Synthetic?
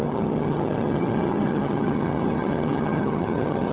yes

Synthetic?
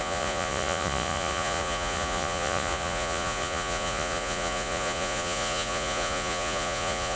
yes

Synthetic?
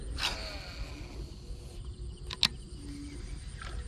no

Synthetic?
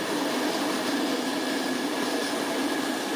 no